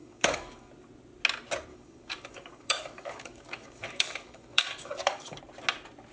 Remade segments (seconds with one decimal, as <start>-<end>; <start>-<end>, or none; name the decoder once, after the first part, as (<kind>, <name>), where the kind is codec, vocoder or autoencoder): 0.0-0.7 (codec, DAC); 1.7-5.4